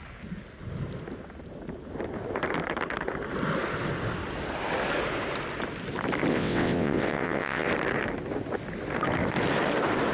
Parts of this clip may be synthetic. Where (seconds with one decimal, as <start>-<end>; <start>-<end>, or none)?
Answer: 6.3-7.7